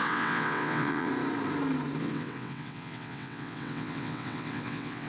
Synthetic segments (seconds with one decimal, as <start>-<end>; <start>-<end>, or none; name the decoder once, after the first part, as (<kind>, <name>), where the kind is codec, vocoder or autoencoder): 0.0-1.1 (vocoder, WaveNeXt); 2.0-5.1